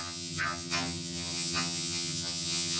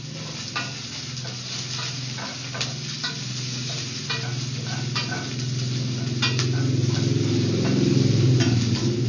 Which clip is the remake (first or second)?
first